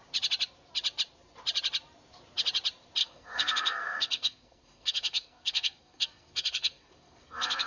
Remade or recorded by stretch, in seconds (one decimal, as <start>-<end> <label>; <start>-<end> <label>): 0.0-3.0 recorded; 3.0-7.7 remade